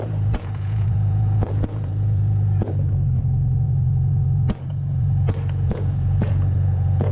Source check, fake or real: fake